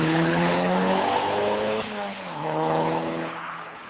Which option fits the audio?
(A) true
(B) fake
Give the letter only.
B